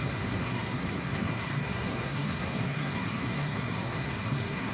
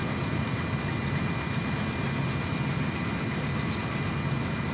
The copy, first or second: first